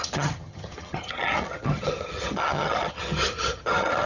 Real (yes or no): no